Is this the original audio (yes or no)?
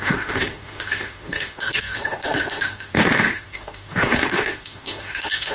no